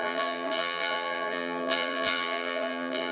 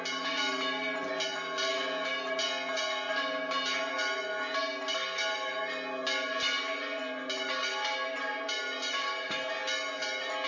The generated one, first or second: first